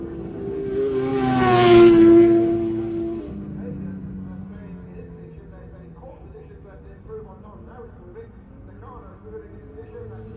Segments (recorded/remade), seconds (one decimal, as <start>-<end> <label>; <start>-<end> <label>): 0.0-10.4 recorded